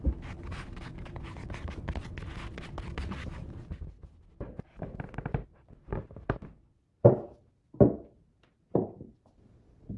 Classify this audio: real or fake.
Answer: real